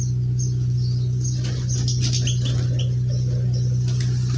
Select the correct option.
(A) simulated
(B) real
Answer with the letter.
B